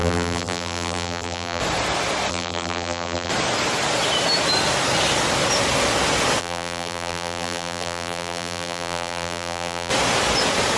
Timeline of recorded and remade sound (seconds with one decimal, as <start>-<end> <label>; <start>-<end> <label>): 0.0-1.6 remade; 1.6-2.3 recorded; 2.3-3.3 remade; 3.3-6.4 recorded; 6.4-9.9 remade; 9.9-10.8 recorded

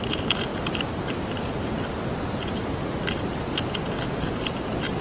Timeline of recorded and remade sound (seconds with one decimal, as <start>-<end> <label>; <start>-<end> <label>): 0.0-2.8 recorded; 2.8-3.6 remade; 3.6-5.0 recorded

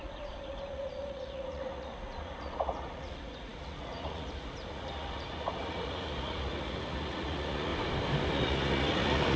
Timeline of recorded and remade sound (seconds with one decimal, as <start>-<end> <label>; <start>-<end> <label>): 0.0-7.7 remade; 7.7-8.3 recorded; 8.3-9.4 remade

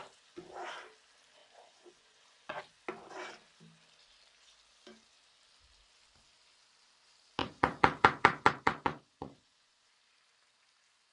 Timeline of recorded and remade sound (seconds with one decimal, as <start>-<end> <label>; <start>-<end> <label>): 0.0-1.4 recorded; 1.4-2.6 remade; 2.6-7.4 recorded; 7.4-9.9 remade; 9.9-11.1 recorded

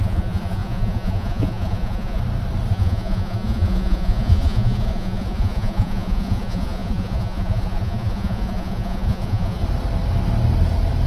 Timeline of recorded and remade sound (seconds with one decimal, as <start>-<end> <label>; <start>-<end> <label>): 0.0-2.2 remade; 2.2-2.7 recorded; 2.7-9.6 remade; 9.6-11.1 recorded